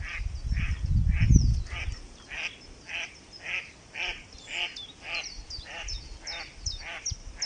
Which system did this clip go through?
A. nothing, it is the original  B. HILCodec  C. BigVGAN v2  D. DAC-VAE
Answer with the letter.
A